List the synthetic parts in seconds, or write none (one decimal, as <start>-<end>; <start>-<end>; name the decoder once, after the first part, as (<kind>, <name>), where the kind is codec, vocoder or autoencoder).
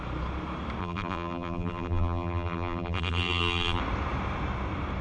0.8-3.8 (vocoder, BigVGAN v2)